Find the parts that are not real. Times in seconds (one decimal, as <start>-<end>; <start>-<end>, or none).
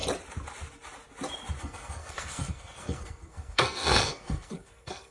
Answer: 1.6-5.1